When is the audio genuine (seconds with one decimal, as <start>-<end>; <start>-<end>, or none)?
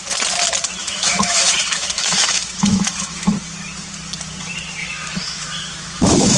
0.0-0.8; 3.3-4.8